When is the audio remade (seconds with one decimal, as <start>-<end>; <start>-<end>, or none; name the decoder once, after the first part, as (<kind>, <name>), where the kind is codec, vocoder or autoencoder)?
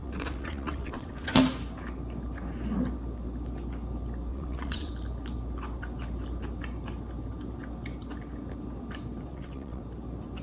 0.0-1.4 (vocoder, WaveNeXt); 4.3-4.9; 9.3-9.8